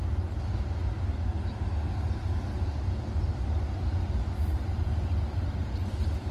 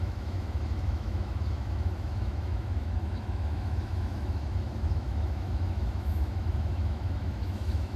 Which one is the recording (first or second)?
first